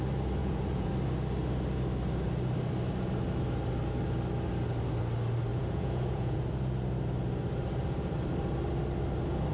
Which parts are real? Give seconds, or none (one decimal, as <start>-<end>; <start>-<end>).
0.0-0.4; 0.9-5.5; 6.5-9.5

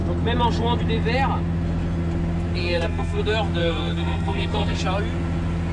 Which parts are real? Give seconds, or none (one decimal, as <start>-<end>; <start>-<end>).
0.0-2.6; 3.2-3.6; 4.8-5.7

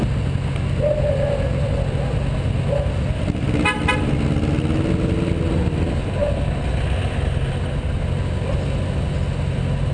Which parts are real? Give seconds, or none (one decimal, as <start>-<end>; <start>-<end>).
0.0-9.9

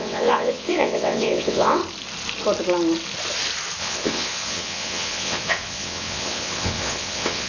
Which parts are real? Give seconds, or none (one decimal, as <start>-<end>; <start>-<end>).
1.8-3.8

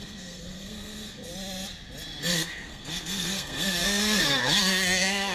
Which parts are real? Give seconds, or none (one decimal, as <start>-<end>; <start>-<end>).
1.3-2.2

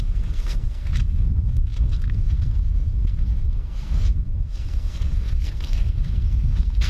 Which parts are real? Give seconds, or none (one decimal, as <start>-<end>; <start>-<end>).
none